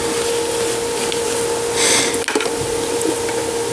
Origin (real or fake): real